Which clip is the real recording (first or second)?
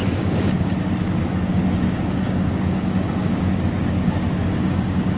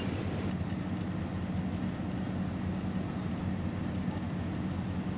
second